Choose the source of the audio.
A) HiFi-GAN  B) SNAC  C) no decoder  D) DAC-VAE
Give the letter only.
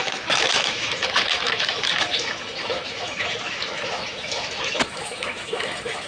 D